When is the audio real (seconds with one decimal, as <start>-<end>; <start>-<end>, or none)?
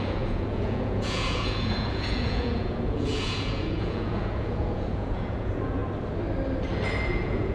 5.8-7.1